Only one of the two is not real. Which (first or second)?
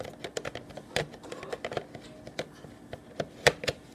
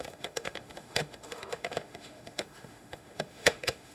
second